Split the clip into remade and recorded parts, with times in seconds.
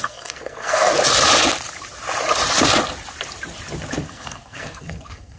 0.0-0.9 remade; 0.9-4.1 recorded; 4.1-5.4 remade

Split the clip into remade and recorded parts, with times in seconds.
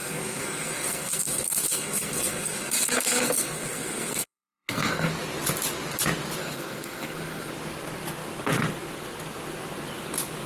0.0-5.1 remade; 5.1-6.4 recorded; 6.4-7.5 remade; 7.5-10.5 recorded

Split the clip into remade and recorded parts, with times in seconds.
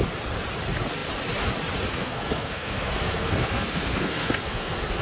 0.0-1.9 recorded; 1.9-5.0 remade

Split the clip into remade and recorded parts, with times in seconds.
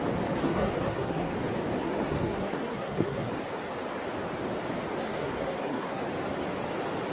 0.0-0.4 recorded; 0.4-1.3 remade; 1.3-1.8 recorded; 1.8-3.3 remade; 3.3-5.0 recorded; 5.0-6.0 remade; 6.0-7.1 recorded